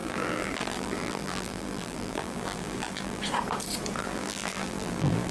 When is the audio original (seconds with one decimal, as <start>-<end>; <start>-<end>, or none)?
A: 3.2-4.0